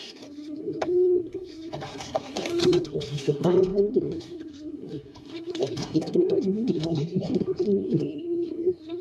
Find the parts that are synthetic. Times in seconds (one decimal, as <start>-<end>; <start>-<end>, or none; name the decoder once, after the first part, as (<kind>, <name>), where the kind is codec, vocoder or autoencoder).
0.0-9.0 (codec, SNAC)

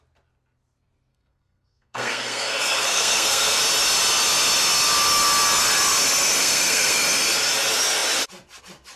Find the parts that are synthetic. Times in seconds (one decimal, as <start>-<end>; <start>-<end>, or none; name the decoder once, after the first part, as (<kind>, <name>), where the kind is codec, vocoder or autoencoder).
1.1-3.6 (codec, SNAC); 6.4-7.0

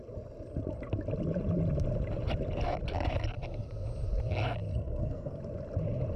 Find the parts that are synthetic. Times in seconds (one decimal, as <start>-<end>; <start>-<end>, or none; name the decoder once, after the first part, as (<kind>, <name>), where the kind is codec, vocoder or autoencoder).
4.7-5.4 (codec, SNAC)

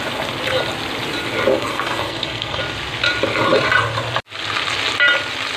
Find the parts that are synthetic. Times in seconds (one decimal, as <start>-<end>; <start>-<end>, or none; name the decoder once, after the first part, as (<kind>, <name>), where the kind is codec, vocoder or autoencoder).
1.5-2.6 (codec, SNAC)

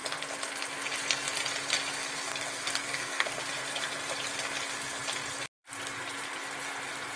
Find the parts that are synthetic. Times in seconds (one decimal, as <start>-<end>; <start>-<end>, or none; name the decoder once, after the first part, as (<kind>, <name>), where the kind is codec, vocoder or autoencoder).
2.3-3.4 (codec, SNAC)

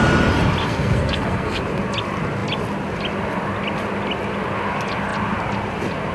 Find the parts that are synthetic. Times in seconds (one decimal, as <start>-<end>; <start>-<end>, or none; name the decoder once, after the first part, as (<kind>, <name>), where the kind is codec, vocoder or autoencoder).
0.6-1.6 (codec, SNAC)